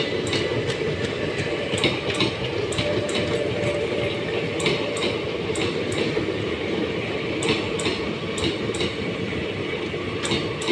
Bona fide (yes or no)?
yes